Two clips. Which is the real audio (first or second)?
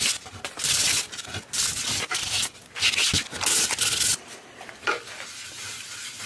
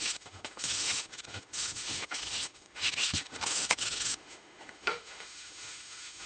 first